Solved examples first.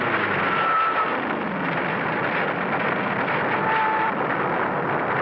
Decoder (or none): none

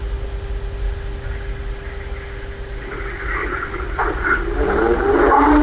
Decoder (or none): none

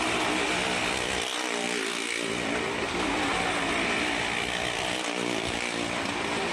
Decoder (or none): none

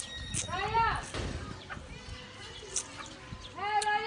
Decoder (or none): none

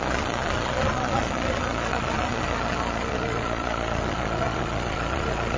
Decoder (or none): vocoder, Vocos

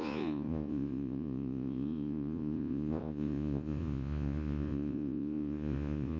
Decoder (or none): vocoder, Vocos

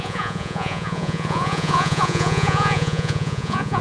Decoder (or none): vocoder, Vocos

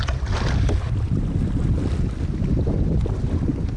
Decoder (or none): none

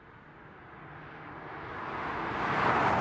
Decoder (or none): none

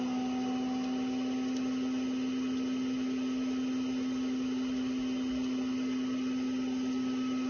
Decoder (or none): none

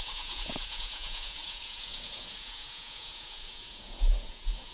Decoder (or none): vocoder, Vocos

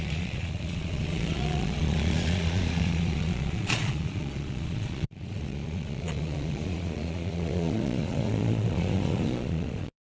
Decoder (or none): vocoder, Vocos